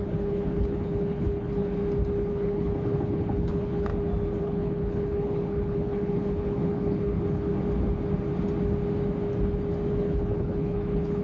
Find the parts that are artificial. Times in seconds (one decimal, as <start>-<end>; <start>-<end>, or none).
0.0-1.8; 2.3-3.9; 4.4-7.5; 9.9-11.2